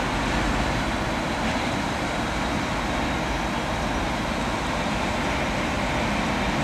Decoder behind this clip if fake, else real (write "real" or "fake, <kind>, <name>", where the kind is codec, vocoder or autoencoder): real